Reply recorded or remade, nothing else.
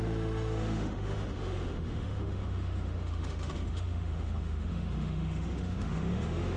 remade